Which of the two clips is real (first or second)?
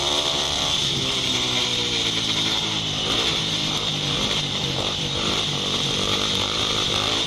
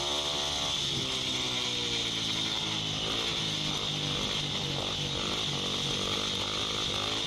second